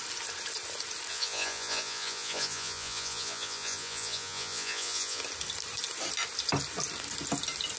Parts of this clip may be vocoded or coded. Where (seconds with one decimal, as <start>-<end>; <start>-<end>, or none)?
1.1-5.2